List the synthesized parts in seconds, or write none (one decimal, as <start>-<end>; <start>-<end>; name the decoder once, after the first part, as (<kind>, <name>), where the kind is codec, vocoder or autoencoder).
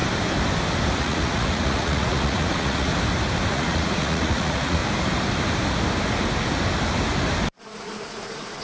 1.0-2.9 (vocoder, Vocos); 3.5-4.8; 7.6-8.6